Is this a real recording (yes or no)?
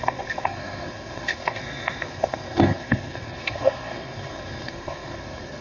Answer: no